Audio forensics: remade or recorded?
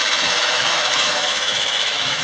remade